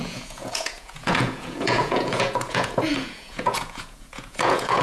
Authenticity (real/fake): fake